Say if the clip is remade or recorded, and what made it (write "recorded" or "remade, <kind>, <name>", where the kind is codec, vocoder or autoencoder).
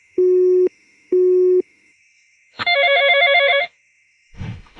remade, autoencoder, DAC-VAE